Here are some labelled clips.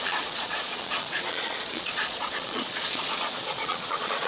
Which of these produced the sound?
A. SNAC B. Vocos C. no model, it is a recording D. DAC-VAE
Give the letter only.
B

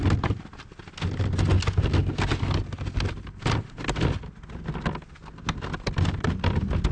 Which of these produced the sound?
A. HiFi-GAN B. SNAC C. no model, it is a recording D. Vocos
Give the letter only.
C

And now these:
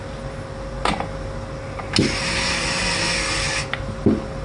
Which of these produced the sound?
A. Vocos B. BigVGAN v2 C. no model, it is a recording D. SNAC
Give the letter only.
C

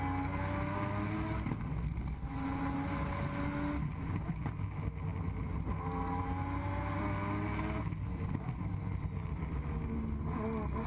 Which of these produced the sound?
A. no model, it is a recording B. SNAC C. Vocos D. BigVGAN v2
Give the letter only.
A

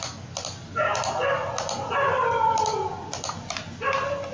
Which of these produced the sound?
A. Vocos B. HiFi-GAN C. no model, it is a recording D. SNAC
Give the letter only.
C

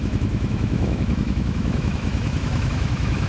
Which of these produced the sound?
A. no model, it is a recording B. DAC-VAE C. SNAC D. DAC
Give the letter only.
B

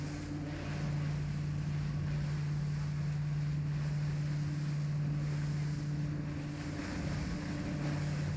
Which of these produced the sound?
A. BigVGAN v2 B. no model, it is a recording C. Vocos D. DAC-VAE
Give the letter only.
B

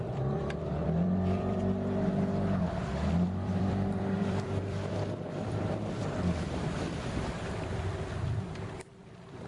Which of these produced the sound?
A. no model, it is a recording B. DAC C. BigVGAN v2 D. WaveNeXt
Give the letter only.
C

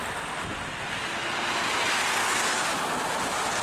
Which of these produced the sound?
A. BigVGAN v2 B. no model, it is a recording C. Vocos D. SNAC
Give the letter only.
B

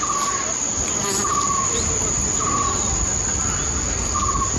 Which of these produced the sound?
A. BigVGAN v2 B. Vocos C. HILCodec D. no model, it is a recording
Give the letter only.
D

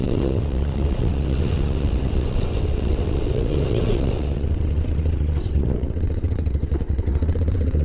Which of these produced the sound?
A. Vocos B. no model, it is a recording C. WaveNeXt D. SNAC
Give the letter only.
C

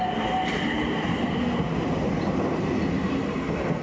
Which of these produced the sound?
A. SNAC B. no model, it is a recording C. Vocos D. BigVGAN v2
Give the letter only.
B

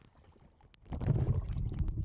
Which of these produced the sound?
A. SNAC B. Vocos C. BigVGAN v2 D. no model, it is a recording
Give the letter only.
D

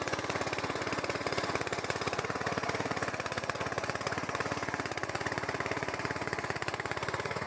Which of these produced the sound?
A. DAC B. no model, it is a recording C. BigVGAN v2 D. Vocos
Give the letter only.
D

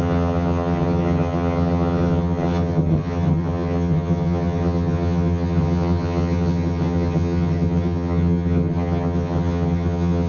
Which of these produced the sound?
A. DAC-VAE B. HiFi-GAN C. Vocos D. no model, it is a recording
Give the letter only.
B